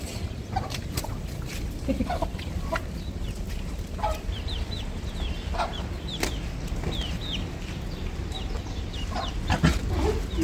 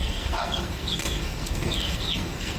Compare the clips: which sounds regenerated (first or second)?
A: second